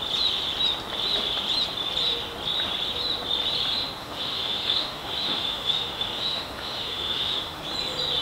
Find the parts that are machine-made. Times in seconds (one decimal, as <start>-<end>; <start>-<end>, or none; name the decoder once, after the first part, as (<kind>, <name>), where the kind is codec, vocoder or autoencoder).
4.0-7.6 (autoencoder, DAC-VAE)